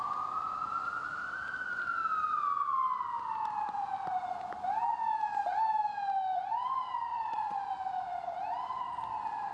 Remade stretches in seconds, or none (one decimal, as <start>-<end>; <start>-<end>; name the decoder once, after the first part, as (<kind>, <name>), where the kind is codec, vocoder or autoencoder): 7.1-7.6 (vocoder, Vocos)

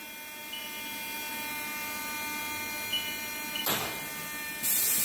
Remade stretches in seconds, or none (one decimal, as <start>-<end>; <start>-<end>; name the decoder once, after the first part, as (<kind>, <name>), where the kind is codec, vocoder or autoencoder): none